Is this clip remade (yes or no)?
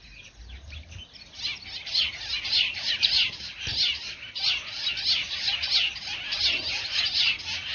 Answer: no